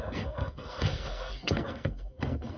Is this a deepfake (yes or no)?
yes